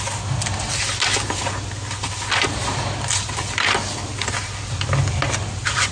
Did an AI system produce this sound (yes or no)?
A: no